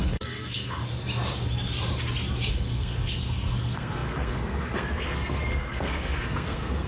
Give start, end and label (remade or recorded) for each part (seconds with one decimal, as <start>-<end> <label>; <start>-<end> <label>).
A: 0.0-0.8 remade; 0.8-2.5 recorded; 2.5-6.9 remade